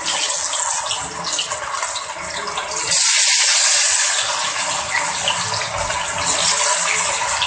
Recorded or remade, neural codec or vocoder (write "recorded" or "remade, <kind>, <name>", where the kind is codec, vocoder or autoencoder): recorded